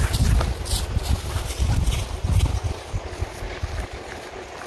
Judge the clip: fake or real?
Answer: real